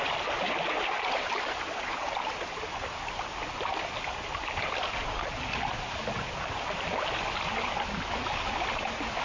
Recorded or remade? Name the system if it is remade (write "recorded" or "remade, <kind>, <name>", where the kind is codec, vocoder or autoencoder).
recorded